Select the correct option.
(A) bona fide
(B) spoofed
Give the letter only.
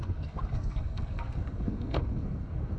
B